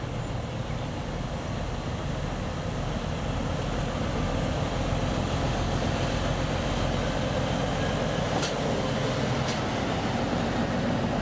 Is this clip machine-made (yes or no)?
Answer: no